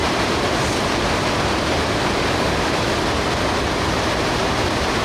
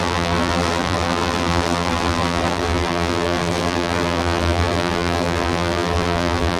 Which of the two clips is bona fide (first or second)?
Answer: first